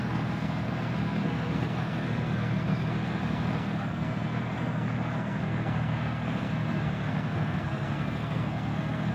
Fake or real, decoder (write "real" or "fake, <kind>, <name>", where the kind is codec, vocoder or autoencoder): fake, codec, SNAC